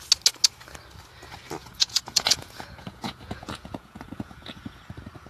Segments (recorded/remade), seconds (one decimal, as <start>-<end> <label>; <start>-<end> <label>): 0.0-1.6 recorded; 1.6-4.8 remade; 4.8-5.3 recorded